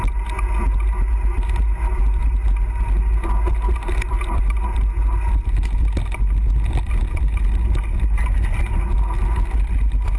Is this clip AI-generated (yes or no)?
no